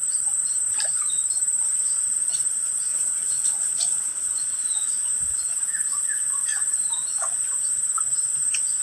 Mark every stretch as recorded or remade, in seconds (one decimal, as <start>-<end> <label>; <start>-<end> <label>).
0.0-2.9 recorded; 2.9-4.4 remade; 4.4-8.8 recorded

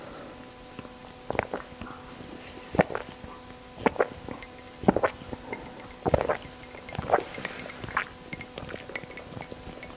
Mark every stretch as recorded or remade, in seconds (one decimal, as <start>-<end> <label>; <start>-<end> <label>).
0.0-10.0 recorded

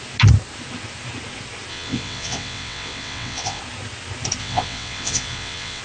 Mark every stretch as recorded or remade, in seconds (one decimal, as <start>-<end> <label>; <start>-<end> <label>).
0.0-1.7 recorded; 1.7-3.6 remade; 3.6-4.4 recorded; 4.4-5.8 remade

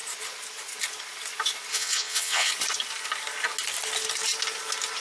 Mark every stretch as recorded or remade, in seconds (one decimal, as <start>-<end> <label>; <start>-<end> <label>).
0.0-1.7 recorded; 1.7-2.5 remade; 2.5-5.0 recorded

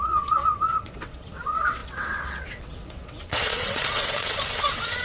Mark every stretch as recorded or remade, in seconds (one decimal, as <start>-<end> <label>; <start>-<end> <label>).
0.0-5.0 remade